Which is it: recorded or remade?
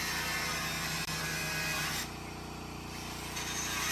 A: recorded